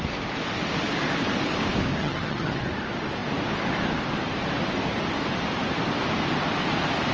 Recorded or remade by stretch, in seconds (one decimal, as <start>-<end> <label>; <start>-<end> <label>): 0.0-2.0 recorded; 2.0-2.6 remade; 2.6-7.1 recorded